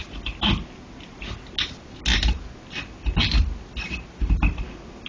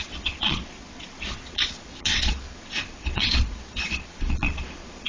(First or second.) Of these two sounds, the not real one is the second